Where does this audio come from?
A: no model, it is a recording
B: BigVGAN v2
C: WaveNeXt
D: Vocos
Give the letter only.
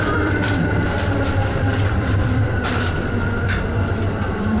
B